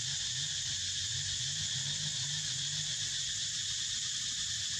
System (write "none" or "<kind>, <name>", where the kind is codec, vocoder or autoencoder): none